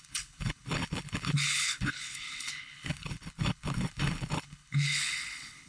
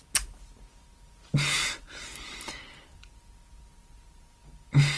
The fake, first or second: first